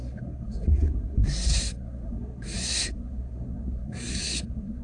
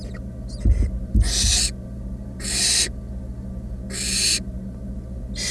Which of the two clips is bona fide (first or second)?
second